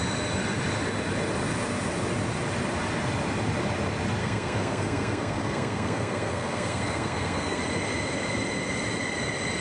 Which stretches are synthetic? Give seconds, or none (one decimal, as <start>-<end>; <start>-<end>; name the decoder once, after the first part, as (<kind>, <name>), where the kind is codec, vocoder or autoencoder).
4.2-7.6 (codec, SNAC)